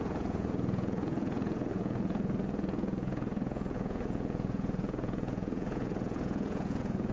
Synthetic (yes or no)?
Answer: yes